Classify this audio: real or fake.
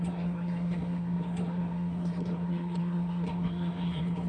fake